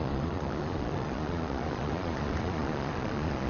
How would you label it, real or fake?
fake